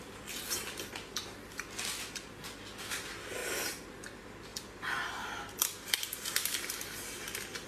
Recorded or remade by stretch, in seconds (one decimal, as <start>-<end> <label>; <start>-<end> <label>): 0.0-7.7 recorded